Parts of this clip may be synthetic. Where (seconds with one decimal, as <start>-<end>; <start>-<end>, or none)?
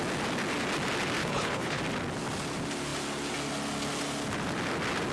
1.2-1.8